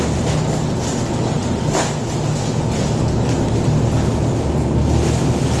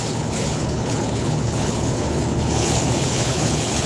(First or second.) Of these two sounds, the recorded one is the first